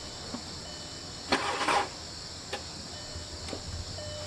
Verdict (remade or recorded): recorded